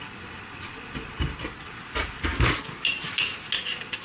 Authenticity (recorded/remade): recorded